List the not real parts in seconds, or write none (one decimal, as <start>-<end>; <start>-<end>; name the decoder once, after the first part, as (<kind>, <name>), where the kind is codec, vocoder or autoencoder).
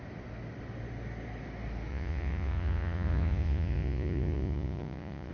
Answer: 1.9-5.3 (vocoder, Vocos)